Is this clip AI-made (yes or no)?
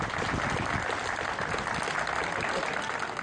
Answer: no